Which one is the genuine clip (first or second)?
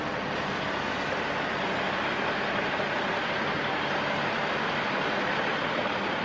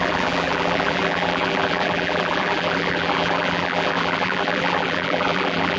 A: first